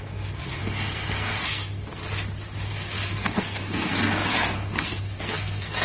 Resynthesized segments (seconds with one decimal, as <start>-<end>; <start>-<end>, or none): 0.0-2.0; 2.7-5.8